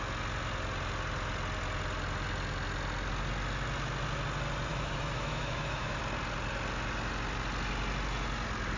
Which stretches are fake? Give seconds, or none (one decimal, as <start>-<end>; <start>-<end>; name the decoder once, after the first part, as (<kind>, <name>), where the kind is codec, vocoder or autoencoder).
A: 4.7-6.0 (autoencoder, DAC-VAE)